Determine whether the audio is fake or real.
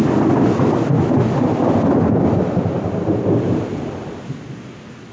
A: real